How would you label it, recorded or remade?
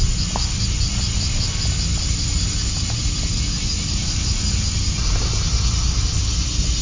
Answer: recorded